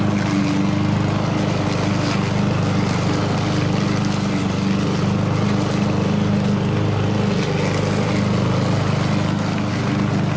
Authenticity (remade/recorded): recorded